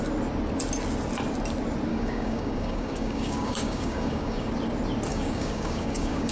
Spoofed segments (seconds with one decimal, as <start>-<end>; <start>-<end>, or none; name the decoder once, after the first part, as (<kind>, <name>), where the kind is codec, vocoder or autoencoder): 1.9-4.5 (codec, DAC); 5.1-6.3